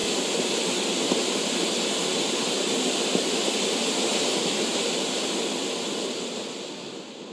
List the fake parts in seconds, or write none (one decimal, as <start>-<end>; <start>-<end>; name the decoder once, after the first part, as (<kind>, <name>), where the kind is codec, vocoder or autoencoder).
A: 0.0-0.9 (vocoder, BigVGAN v2)